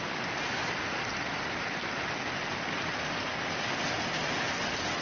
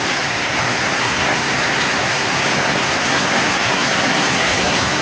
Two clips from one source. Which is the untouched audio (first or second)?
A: first